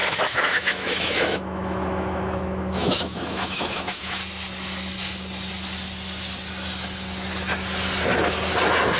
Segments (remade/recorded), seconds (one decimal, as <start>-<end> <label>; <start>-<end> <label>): 0.0-4.2 remade; 4.2-9.0 recorded